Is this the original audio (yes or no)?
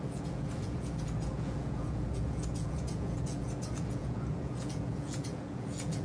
no